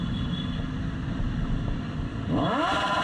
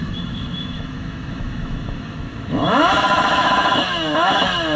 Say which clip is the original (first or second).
first